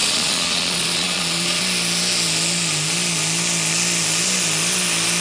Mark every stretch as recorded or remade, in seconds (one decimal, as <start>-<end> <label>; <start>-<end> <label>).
0.0-1.6 remade; 1.6-5.2 recorded